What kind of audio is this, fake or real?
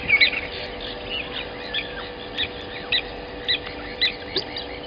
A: real